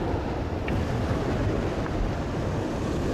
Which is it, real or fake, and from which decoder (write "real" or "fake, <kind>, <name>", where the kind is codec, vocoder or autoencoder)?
real